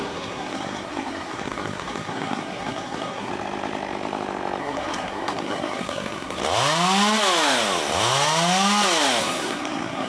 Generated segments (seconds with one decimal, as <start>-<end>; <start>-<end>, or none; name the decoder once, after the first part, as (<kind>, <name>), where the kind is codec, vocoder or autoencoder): 0.0-3.3 (codec, SNAC); 4.6-6.4; 9.2-10.1